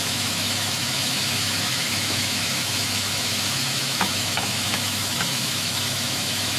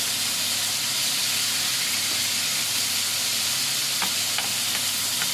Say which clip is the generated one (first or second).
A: first